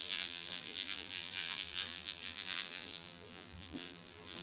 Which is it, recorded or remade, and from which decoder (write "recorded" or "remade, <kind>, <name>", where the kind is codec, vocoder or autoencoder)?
remade, vocoder, BigVGAN v2